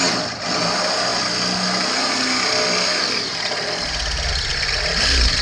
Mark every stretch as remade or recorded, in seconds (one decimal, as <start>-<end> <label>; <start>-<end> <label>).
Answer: 0.0-1.1 remade; 1.1-4.3 recorded; 4.3-5.4 remade